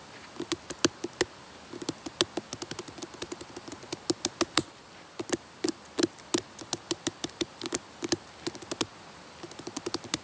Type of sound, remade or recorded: recorded